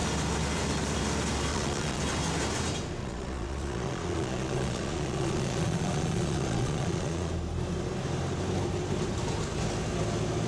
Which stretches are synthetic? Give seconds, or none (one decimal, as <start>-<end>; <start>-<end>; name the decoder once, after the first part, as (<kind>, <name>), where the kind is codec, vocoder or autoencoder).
1.5-2.0 (vocoder, Vocos); 3.0-7.3